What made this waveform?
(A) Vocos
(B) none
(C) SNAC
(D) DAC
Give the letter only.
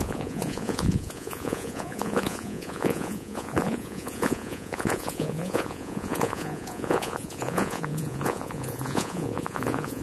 A